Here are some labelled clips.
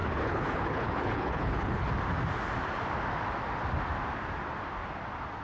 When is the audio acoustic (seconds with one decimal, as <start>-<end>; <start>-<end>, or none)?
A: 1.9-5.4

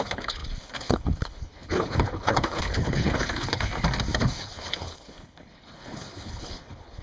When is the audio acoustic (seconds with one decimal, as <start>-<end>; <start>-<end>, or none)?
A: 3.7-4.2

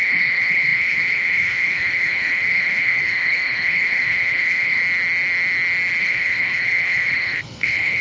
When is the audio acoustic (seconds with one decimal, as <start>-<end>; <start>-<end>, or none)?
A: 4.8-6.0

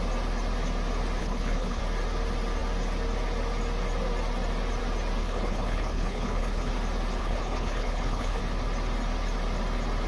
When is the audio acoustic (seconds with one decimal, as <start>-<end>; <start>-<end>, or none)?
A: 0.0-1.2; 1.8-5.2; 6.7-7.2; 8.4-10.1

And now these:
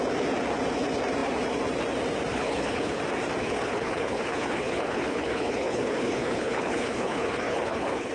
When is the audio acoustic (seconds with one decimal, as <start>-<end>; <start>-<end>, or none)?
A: 0.0-2.3; 3.0-3.4

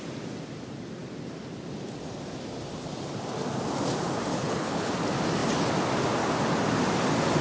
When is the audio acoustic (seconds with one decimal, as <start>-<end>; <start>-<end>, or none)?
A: 0.0-4.3; 4.9-7.4